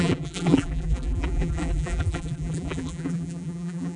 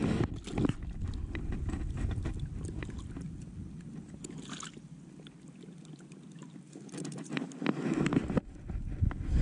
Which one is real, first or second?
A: second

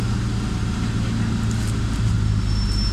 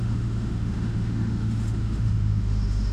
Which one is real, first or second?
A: first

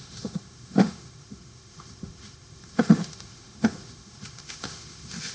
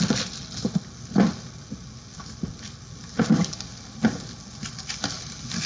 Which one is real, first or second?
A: second